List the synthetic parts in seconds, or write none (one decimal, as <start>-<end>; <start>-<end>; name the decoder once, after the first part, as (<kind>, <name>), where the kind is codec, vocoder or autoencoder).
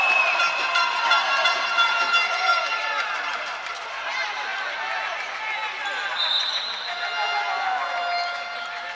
none